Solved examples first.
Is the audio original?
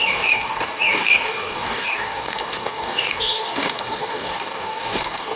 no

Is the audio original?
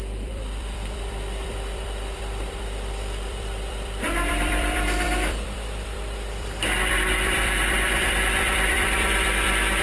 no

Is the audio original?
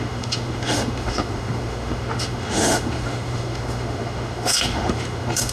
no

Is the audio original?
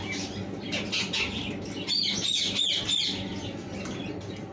yes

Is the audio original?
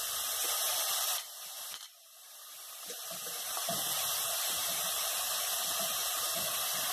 yes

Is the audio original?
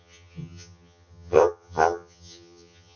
no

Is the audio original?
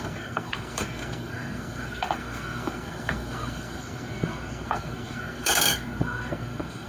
no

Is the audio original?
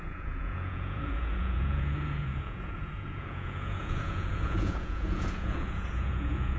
no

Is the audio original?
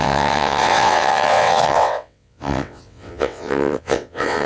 no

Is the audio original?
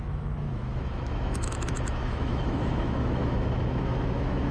no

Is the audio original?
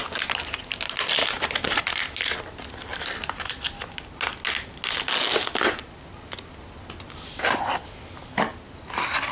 yes